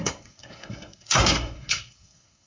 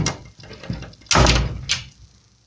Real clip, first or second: second